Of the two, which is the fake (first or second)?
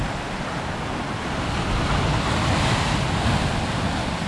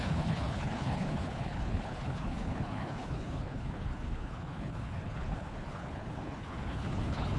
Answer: second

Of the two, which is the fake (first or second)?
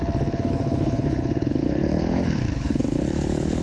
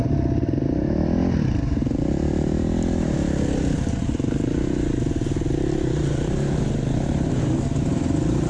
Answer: first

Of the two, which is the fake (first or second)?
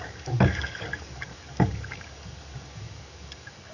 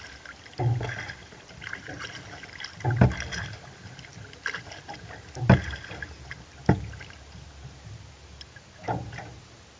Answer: first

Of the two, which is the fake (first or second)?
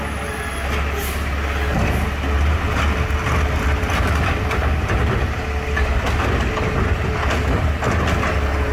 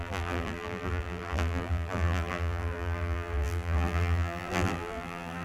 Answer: second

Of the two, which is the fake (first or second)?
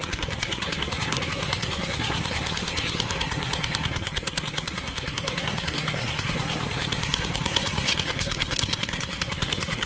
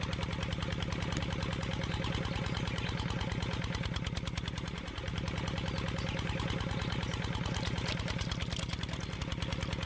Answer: first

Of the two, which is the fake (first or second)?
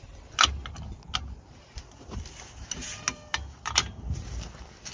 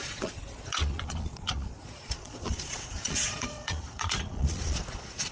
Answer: second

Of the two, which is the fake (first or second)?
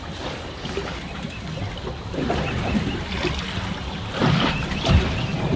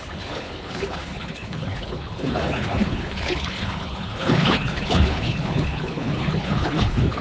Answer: second